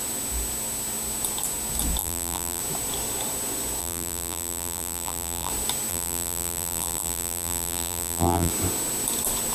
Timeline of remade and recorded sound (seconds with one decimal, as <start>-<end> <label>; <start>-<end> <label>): 0.0-2.0 recorded; 2.0-2.6 remade; 2.6-3.8 recorded; 3.8-5.5 remade; 5.5-5.9 recorded; 5.9-8.5 remade; 8.5-9.5 recorded